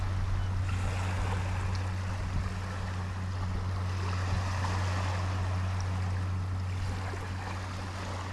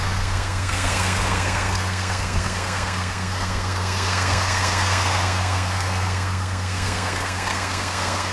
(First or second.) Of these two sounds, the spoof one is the second